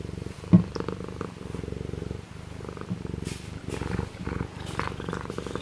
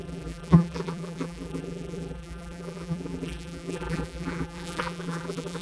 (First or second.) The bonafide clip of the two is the first